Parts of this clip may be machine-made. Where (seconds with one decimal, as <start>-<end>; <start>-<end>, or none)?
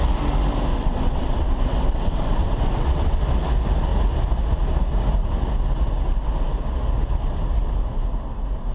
0.7-3.2